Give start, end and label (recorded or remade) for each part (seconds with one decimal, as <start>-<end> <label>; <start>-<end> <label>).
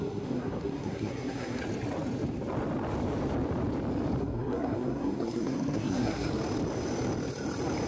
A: 0.0-1.6 remade; 1.6-4.2 recorded; 4.2-6.3 remade; 6.3-7.9 recorded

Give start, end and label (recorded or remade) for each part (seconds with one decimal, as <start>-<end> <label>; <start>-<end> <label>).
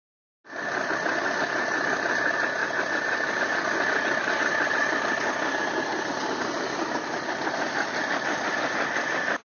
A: 0.0-9.5 recorded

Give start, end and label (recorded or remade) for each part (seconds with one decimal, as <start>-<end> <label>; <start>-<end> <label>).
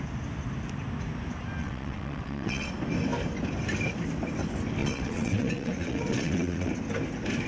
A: 0.0-1.6 recorded; 1.6-2.7 remade; 2.7-4.8 recorded; 4.8-6.7 remade; 6.7-7.5 recorded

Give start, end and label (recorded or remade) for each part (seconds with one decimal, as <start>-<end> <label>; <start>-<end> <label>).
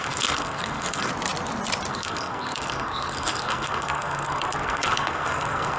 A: 0.0-1.1 remade; 1.1-1.9 recorded; 1.9-5.8 remade